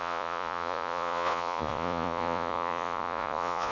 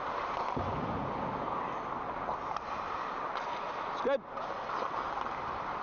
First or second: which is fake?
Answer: first